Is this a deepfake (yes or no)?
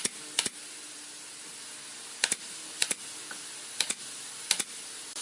no